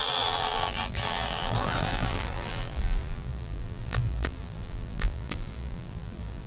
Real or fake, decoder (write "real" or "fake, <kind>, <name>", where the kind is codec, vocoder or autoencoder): fake, vocoder, BigVGAN v2